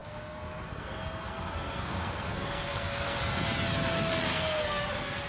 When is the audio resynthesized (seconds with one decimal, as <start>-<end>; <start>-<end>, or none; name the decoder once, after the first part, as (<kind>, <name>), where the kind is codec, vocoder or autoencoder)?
0.0-3.2 (codec, SNAC); 4.3-5.3